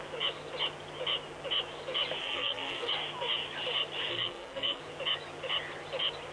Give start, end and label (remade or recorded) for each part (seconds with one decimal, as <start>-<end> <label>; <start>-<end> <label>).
0.0-2.2 recorded; 2.2-2.9 remade; 2.9-4.1 recorded; 4.1-4.8 remade; 4.8-6.3 recorded